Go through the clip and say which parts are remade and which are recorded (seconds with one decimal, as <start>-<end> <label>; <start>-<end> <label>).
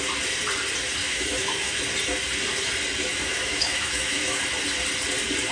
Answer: 0.0-1.0 recorded; 1.0-1.8 remade; 1.8-3.1 recorded; 3.1-4.4 remade; 4.4-5.5 recorded